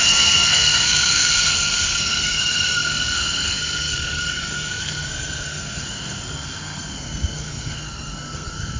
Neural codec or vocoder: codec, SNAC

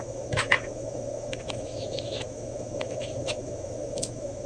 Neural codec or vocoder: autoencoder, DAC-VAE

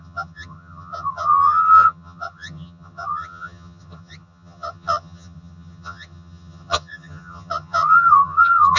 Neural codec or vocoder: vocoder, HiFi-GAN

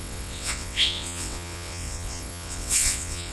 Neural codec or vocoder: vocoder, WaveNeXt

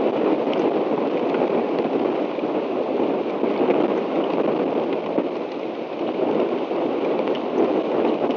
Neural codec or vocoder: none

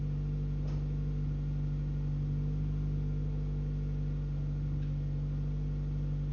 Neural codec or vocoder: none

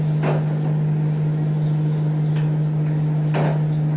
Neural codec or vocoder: none